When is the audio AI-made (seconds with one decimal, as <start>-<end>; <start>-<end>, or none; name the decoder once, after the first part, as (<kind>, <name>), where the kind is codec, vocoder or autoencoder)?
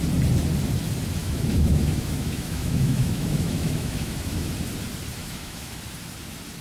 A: 1.2-4.5 (autoencoder, DAC-VAE); 5.2-5.8